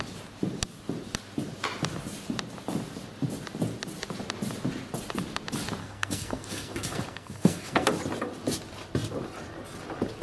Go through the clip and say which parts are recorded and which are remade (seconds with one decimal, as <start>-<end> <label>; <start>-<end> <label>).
0.0-5.8 recorded; 5.8-7.9 remade; 7.9-10.2 recorded